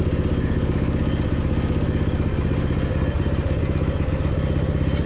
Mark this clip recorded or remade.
recorded